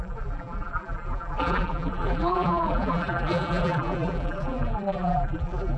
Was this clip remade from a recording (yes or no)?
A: yes